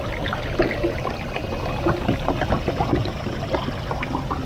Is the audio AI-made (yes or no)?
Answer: no